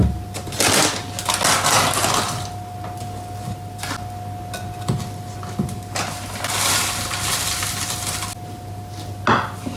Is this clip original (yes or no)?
yes